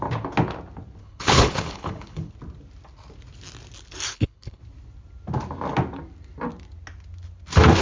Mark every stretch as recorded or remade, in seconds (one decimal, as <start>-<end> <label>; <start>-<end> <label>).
0.0-1.0 recorded; 1.0-2.3 remade; 2.3-4.1 recorded; 4.1-4.6 remade; 4.6-7.8 recorded